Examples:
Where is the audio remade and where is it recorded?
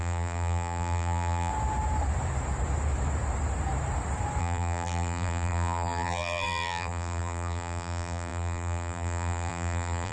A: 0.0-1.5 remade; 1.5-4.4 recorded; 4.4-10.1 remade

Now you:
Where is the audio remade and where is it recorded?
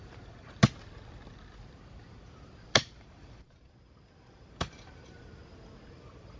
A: 0.0-0.6 remade; 0.6-2.6 recorded; 2.6-5.4 remade; 5.4-5.9 recorded; 5.9-6.4 remade